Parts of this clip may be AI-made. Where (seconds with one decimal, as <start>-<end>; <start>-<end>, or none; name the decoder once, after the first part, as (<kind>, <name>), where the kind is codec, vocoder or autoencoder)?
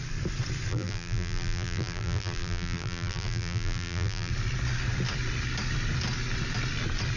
0.7-4.3 (vocoder, BigVGAN v2)